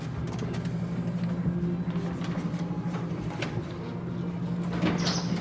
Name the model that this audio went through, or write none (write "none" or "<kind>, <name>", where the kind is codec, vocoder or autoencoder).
none